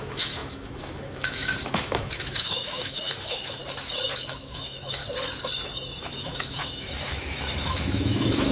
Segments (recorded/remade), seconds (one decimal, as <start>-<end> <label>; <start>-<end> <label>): 0.0-3.6 remade; 3.6-4.2 recorded; 4.2-5.0 remade; 5.0-6.0 recorded; 6.0-8.5 remade